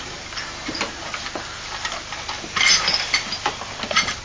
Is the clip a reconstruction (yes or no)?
yes